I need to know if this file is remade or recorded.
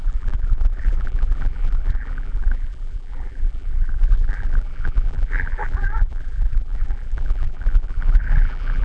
remade